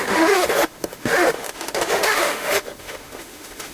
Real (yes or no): no